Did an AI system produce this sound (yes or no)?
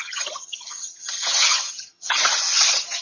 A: yes